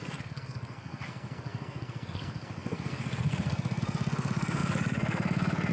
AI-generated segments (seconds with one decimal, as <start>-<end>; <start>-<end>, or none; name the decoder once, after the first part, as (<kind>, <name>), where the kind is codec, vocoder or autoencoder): 0.0-5.7 (codec, SNAC)